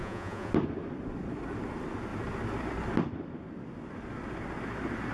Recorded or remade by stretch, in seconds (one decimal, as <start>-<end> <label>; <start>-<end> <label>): 0.0-0.5 remade; 0.5-5.1 recorded